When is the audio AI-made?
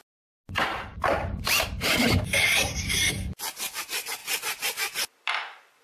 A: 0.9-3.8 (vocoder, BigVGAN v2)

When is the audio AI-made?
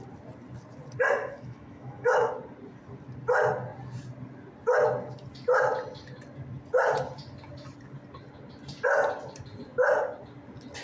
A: 1.2-2.3 (autoencoder, DAC-VAE)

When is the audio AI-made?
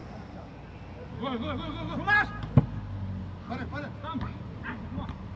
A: none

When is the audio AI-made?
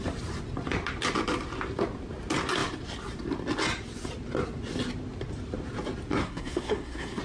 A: 6.2-7.2 (codec, SNAC)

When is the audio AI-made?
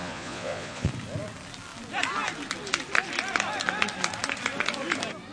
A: 0.0-0.9 (vocoder, Vocos)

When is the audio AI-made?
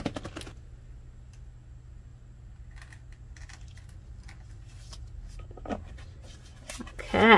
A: none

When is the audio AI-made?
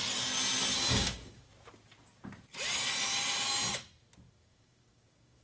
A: 0.9-1.5 (codec, DAC); 4.3-5.4